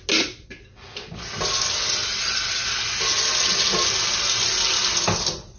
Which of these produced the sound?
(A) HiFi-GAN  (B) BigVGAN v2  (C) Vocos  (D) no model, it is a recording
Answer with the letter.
D